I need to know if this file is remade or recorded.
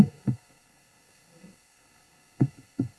remade